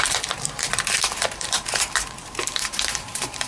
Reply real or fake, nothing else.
fake